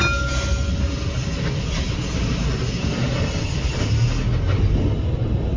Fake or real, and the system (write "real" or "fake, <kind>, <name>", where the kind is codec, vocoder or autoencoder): real